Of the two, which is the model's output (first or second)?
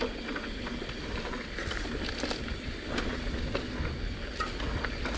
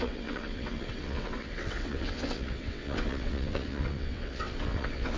second